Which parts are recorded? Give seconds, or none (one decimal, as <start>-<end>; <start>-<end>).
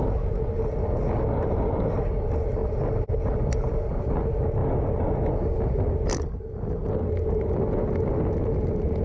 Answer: 0.0-9.0